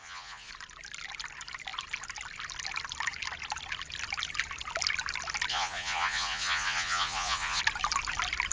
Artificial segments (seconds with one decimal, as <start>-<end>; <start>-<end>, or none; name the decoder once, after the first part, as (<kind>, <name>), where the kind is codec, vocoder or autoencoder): 0.0-0.5 (vocoder, Vocos); 5.5-7.6